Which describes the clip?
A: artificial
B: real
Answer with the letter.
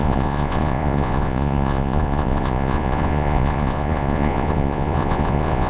A